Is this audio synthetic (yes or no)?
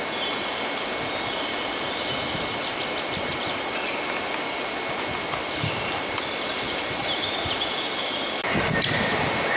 no